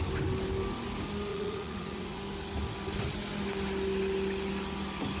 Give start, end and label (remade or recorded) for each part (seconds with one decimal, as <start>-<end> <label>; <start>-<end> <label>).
0.0-1.3 recorded; 1.3-2.2 remade; 2.2-5.2 recorded